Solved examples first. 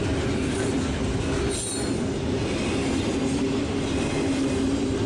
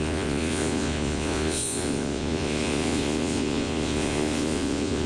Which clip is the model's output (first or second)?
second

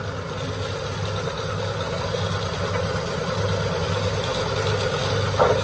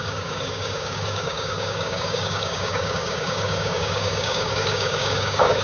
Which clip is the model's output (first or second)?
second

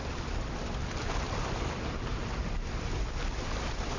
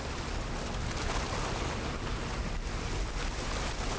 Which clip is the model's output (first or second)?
first